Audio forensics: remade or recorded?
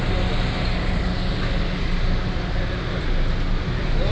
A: recorded